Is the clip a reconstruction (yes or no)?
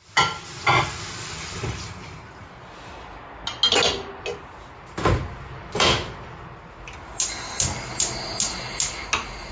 no